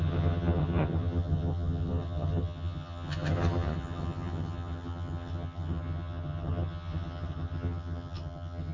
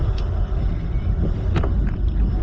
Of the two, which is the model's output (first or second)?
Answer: first